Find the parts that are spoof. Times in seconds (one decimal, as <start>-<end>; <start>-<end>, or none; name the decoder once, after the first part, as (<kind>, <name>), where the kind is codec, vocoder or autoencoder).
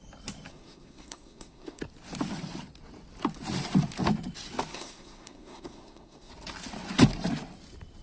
0.5-1.8 (codec, SNAC); 4.7-6.3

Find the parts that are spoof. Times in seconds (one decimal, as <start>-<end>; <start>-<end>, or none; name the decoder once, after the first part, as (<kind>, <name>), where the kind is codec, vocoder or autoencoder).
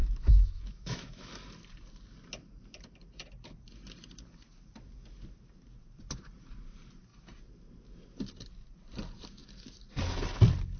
0.0-1.3 (autoencoder, DAC-VAE)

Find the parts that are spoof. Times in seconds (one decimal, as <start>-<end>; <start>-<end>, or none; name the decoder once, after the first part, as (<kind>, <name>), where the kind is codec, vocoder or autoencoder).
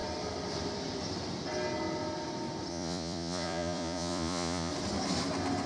2.7-4.7 (vocoder, Vocos)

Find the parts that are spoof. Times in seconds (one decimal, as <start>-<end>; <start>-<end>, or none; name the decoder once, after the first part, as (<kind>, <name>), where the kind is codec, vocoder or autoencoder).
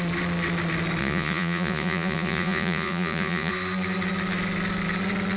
1.0-3.5 (vocoder, Vocos)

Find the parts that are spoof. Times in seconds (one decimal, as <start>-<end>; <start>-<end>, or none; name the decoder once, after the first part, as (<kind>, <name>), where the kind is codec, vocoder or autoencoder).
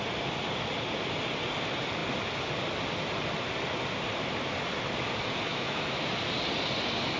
5.5-6.1 (autoencoder, DAC-VAE)